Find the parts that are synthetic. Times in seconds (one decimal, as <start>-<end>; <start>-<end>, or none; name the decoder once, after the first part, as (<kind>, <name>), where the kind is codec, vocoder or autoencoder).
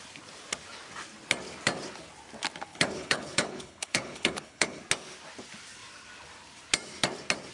2.7-4.8 (codec, HILCodec)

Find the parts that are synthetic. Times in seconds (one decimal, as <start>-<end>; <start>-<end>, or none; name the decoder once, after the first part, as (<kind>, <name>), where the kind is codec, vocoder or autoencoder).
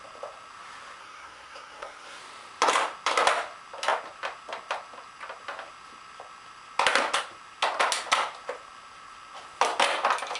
1.0-2.2 (codec, SNAC)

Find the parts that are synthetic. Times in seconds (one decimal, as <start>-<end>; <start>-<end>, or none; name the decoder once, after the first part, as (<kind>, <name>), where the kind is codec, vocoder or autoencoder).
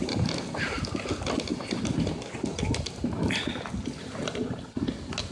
none